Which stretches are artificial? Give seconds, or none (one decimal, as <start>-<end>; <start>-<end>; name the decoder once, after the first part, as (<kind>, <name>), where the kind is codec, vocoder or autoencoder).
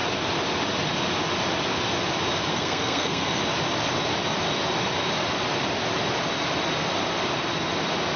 2.5-3.4 (codec, SNAC)